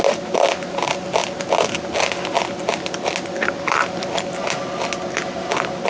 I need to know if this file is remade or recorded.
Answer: recorded